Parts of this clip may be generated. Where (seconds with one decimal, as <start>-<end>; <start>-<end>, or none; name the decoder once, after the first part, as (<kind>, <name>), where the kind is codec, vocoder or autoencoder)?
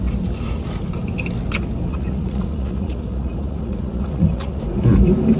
1.9-4.6 (vocoder, Vocos)